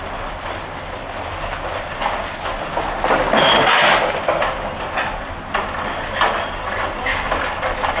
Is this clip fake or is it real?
real